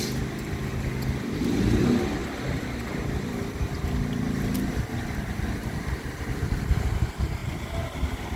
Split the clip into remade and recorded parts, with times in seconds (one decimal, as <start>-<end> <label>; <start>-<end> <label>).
0.0-2.2 recorded; 2.2-6.0 remade; 6.0-8.4 recorded